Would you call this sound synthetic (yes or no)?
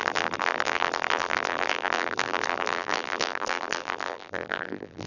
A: yes